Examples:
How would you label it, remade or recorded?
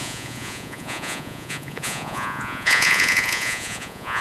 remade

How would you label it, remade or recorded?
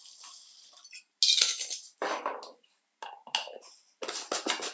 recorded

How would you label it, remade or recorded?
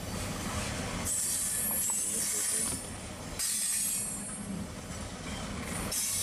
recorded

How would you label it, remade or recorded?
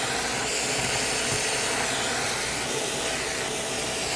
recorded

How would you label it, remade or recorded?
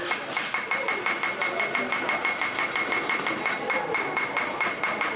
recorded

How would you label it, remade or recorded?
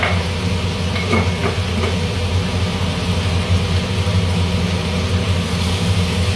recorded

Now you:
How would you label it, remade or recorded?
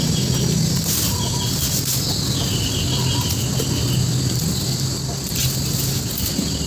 recorded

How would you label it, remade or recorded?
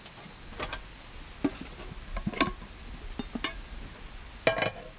recorded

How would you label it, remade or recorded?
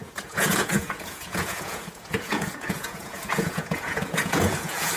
remade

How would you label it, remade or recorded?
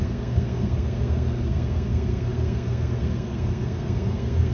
remade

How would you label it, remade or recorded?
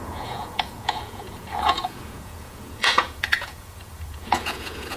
remade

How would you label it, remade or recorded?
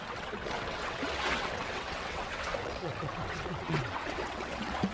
remade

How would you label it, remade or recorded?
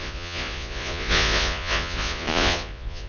remade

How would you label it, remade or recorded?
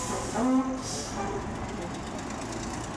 recorded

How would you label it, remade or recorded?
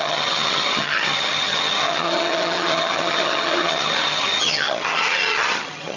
remade